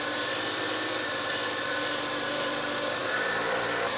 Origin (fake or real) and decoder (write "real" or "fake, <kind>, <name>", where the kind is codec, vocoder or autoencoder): fake, vocoder, BigVGAN v2